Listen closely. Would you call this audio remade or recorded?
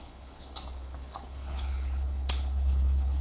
remade